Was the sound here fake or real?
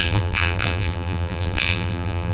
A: fake